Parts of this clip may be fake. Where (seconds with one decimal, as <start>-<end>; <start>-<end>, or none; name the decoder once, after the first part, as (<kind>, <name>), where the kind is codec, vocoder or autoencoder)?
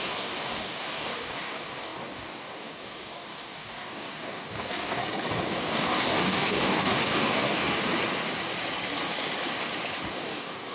0.0-5.0 (codec, DAC); 5.5-7.9; 10.1-10.7